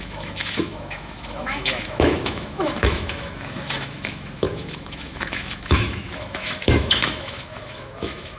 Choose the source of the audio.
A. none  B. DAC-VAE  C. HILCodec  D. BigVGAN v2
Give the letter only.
B